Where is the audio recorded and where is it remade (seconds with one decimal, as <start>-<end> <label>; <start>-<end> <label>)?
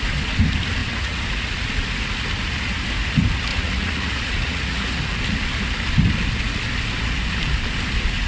0.0-0.8 recorded; 0.8-1.7 remade; 1.7-3.5 recorded; 3.5-5.0 remade; 5.0-8.3 recorded